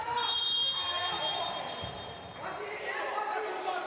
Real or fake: real